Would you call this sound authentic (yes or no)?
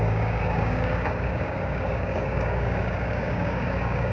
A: no